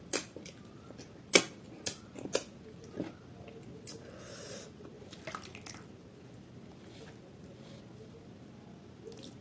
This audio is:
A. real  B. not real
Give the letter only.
A